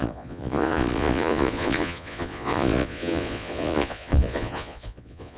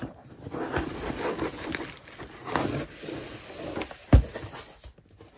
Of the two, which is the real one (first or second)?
second